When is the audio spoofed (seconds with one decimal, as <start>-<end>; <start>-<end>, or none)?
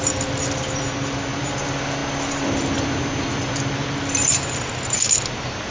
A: none